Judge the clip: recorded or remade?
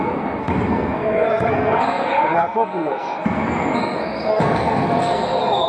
remade